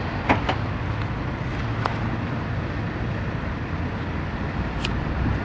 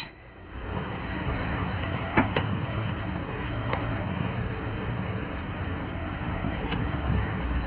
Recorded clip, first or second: first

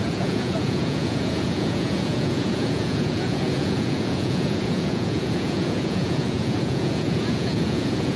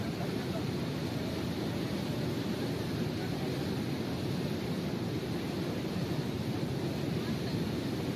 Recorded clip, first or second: second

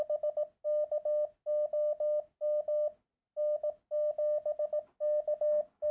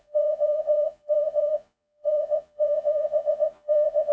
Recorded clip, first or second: first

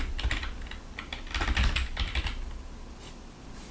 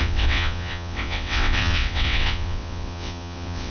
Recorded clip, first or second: first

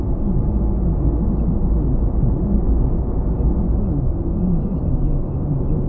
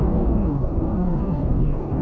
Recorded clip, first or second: first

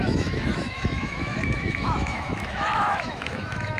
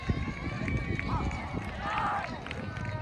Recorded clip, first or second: second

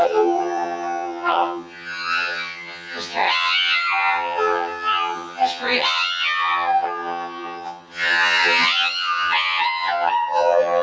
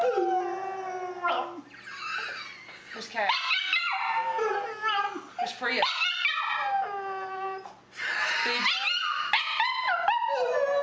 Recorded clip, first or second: second